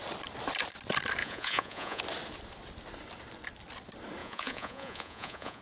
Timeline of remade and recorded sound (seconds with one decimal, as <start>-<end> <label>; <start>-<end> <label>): 0.0-1.2 recorded; 1.2-2.0 remade; 2.0-4.2 recorded; 4.2-5.6 remade